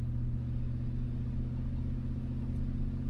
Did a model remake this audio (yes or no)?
no